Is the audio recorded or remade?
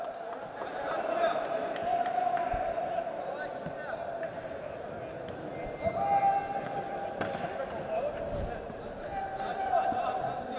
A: recorded